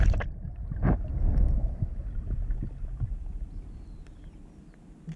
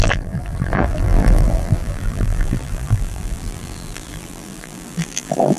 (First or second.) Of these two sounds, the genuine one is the first